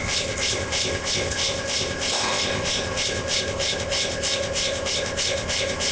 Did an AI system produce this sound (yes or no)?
yes